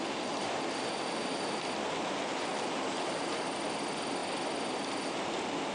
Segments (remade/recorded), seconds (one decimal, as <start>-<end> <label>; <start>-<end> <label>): 0.0-5.7 recorded